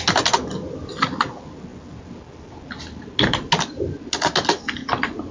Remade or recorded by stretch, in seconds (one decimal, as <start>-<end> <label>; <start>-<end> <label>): 0.0-5.3 recorded

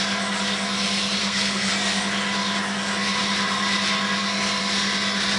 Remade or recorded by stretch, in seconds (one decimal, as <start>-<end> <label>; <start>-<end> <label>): 0.0-1.2 recorded; 1.2-1.7 remade; 1.7-5.4 recorded

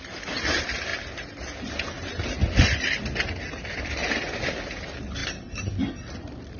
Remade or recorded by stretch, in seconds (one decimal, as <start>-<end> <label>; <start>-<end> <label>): 0.0-6.6 recorded

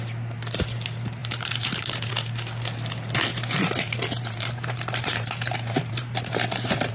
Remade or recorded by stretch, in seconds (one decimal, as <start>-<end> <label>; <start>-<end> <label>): 0.0-1.2 recorded; 1.2-2.1 remade; 2.1-3.3 recorded; 3.3-6.9 remade